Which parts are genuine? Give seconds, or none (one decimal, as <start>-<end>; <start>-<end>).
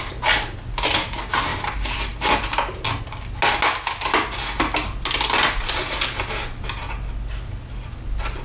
0.0-8.4